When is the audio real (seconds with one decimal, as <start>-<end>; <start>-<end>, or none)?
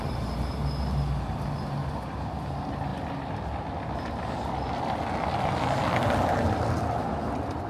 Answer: 0.0-7.7